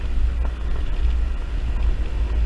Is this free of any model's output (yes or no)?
yes